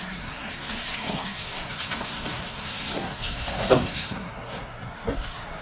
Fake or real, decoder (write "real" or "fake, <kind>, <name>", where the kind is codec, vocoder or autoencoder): fake, codec, SNAC